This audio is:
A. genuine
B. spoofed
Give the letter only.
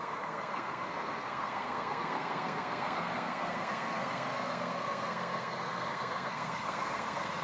B